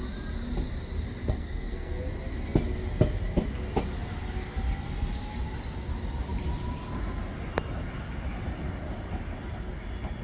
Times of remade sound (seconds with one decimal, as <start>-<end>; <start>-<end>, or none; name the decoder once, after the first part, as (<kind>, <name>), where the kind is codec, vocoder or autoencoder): 1.2-2.0 (codec, SNAC)